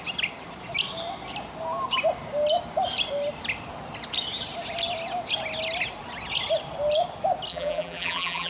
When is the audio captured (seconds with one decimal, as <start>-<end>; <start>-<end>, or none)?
0.0-7.5